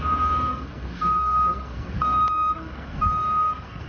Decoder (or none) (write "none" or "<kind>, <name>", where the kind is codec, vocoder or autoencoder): codec, SNAC